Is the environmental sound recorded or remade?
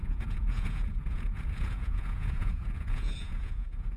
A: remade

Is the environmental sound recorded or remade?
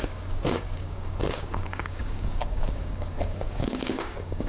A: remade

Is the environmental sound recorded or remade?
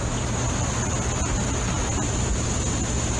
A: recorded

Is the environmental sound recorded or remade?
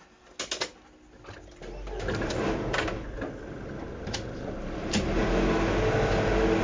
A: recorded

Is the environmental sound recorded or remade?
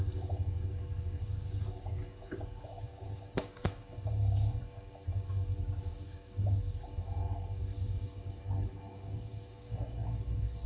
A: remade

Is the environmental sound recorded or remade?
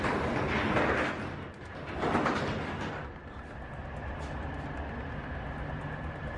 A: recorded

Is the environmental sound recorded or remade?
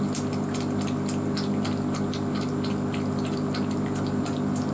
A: recorded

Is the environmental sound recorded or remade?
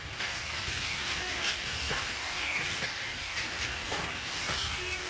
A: remade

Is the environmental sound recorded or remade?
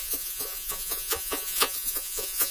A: remade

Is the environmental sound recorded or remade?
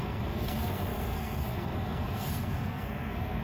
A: remade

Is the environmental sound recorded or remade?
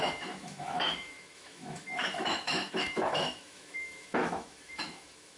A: remade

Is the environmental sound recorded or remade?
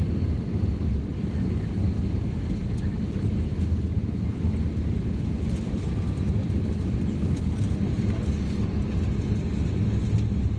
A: recorded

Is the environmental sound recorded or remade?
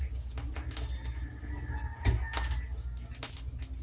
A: recorded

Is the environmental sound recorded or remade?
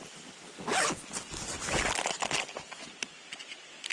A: recorded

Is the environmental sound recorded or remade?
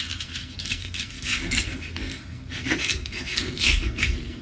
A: remade